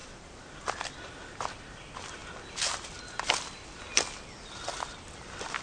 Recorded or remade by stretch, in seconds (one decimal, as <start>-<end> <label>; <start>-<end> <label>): 0.0-0.6 remade; 0.6-5.6 recorded